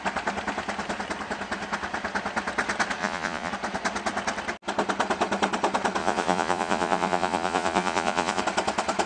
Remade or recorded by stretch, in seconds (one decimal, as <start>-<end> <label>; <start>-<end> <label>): 0.0-3.0 recorded; 3.0-3.5 remade; 3.5-6.0 recorded; 6.0-8.4 remade; 8.4-9.1 recorded